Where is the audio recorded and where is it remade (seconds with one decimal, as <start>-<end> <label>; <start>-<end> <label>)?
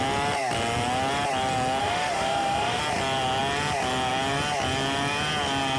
0.0-1.8 recorded; 1.8-2.8 remade; 2.8-5.8 recorded